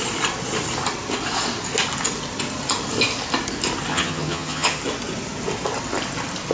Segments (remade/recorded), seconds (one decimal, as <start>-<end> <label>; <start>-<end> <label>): 0.0-3.9 recorded; 3.9-4.8 remade; 4.8-6.5 recorded